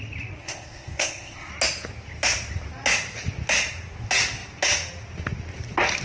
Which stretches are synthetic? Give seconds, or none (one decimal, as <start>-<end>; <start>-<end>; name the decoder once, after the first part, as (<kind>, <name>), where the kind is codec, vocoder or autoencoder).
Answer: 0.4-1.5 (codec, ZipCodec)